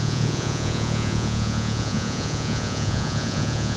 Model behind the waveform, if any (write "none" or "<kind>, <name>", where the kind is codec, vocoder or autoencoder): vocoder, Vocos